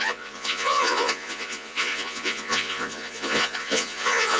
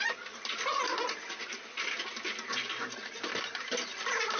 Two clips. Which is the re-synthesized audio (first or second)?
first